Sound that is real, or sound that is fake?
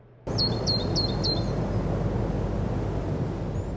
real